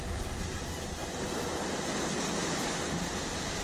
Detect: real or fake real